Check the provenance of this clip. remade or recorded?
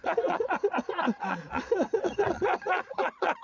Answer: remade